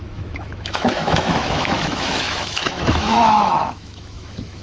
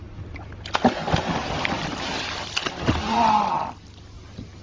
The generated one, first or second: first